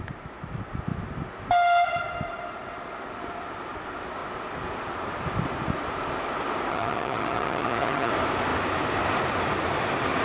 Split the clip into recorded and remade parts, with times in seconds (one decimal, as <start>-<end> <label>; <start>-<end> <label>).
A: 0.0-6.7 recorded; 6.7-8.1 remade; 8.1-10.2 recorded